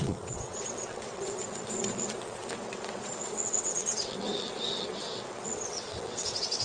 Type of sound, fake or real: fake